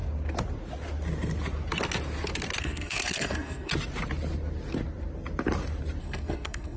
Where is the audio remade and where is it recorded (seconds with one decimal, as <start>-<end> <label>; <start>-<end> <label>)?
0.0-2.6 recorded; 2.6-3.7 remade; 3.7-6.0 recorded; 6.0-6.8 remade